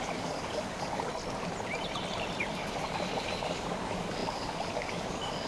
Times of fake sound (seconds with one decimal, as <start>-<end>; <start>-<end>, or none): 0.0-1.1; 2.4-5.5